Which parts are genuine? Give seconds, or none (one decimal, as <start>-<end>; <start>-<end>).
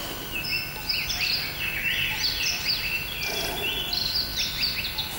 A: 0.0-5.2